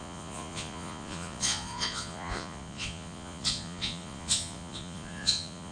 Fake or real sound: fake